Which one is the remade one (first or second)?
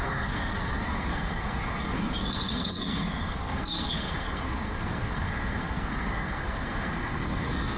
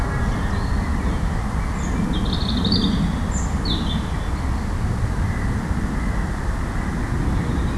first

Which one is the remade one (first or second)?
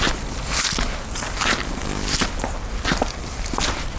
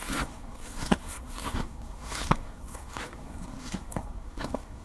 second